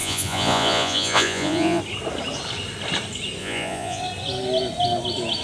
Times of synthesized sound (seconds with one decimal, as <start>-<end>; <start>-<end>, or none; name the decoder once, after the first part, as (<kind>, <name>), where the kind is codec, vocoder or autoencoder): 0.0-1.8 (vocoder, Vocos); 3.4-4.0